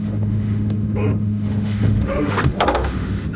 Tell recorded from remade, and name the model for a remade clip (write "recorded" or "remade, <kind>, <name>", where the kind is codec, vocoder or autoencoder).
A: remade, autoencoder, DAC-VAE